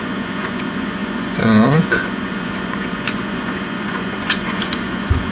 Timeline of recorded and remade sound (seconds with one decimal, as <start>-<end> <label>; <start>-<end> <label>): 0.0-5.3 remade